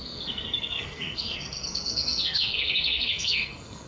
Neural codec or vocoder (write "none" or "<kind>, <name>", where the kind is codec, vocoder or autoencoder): codec, SNAC